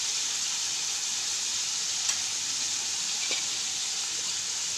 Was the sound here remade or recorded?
recorded